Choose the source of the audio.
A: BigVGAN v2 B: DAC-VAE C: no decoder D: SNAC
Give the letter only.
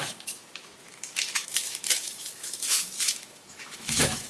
B